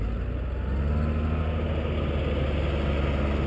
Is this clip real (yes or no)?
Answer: yes